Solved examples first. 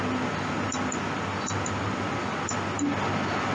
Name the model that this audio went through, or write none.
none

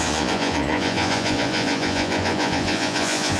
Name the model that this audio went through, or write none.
vocoder, Vocos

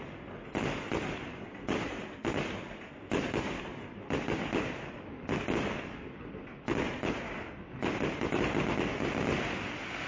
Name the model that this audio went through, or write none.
none